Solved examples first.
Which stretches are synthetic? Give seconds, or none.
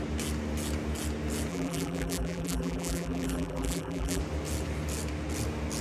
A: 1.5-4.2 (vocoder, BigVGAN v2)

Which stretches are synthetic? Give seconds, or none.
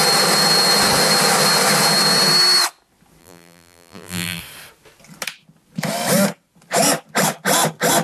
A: 3.2-4.4 (vocoder, BigVGAN v2)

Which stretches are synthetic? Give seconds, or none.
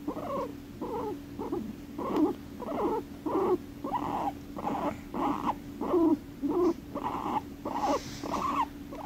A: 6.1-7.8 (vocoder, BigVGAN v2)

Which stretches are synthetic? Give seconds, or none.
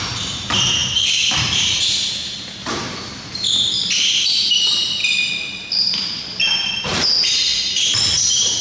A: 0.0-5.0 (vocoder, BigVGAN v2); 5.7-8.6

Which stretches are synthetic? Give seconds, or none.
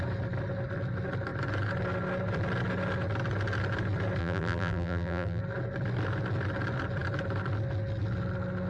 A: 4.2-5.4 (vocoder, BigVGAN v2)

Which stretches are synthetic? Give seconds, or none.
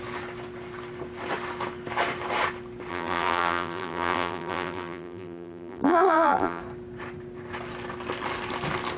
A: 2.9-6.6 (vocoder, BigVGAN v2)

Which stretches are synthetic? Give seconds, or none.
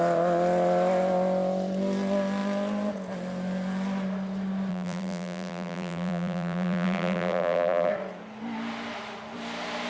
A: 4.7-7.9 (vocoder, BigVGAN v2)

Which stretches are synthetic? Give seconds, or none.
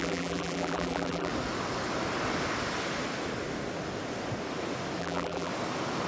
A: 0.0-1.3 (vocoder, BigVGAN v2); 5.0-5.5